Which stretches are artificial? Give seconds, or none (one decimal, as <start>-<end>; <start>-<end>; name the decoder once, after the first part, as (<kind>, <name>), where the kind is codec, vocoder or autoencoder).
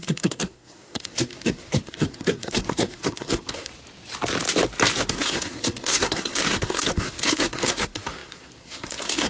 0.0-3.7 (codec, SNAC); 5.1-9.3